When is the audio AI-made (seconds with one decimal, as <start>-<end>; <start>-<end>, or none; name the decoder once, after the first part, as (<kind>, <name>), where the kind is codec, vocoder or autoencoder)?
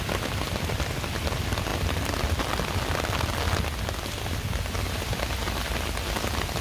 none